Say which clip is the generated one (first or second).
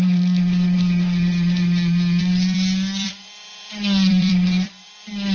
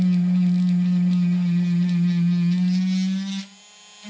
first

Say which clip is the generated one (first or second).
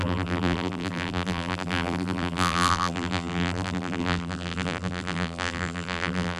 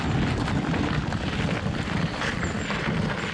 first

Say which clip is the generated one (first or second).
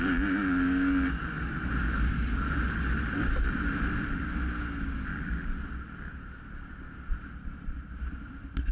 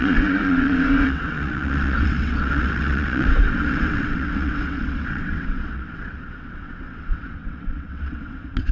second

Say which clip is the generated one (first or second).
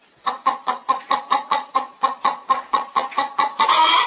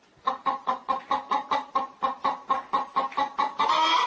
first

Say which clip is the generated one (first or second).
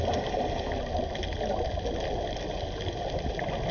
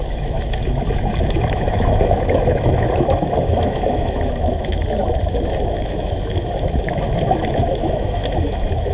second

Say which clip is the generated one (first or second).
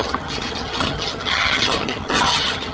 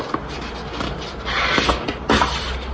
first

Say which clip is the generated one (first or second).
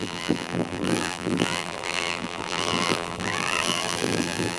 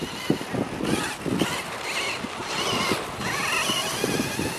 first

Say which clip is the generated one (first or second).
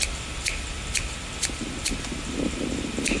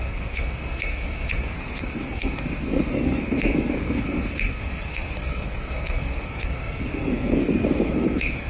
second